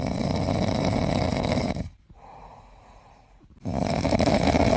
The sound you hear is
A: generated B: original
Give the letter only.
A